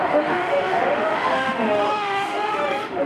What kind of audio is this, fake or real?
fake